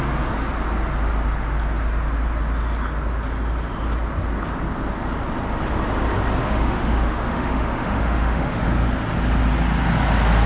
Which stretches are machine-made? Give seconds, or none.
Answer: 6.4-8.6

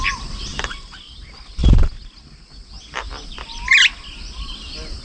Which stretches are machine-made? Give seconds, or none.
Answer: none